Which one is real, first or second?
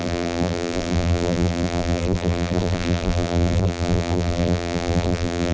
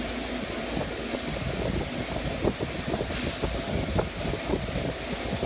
second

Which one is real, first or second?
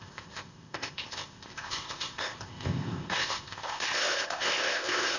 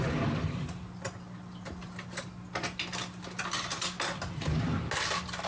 second